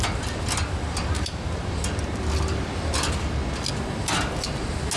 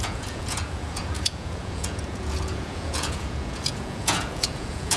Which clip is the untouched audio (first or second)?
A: first